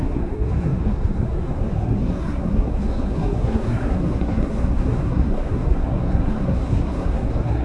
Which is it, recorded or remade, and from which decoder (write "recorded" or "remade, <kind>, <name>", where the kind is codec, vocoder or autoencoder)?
remade, codec, SNAC